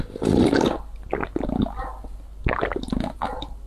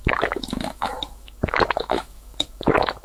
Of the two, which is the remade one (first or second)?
second